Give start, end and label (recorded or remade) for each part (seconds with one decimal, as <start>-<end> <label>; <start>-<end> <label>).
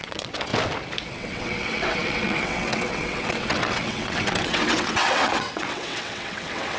0.0-0.5 remade; 0.5-1.1 recorded; 1.1-6.8 remade